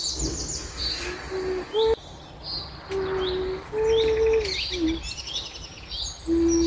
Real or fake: real